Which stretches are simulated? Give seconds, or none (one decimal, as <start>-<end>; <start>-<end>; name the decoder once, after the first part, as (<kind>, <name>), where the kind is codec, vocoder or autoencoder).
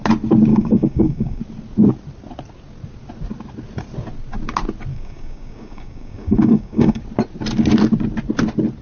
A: 0.5-1.4 (codec, DAC); 4.9-7.0